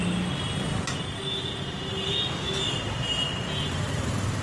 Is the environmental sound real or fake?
real